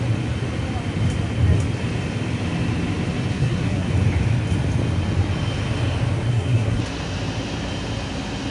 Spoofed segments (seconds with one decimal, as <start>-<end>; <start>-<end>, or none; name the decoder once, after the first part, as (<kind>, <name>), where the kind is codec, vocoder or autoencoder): 3.3-3.9 (codec, SNAC); 6.3-6.8